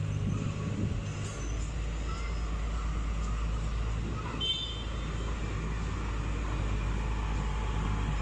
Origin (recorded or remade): recorded